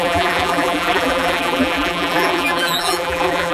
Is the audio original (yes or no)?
no